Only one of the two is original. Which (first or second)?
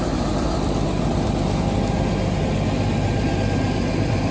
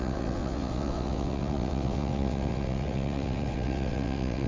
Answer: first